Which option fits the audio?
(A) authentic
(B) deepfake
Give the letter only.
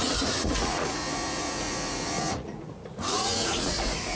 B